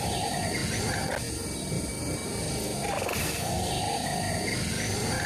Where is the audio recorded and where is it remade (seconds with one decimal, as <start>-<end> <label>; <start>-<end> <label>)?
0.0-3.2 recorded; 3.2-3.7 remade; 3.7-5.3 recorded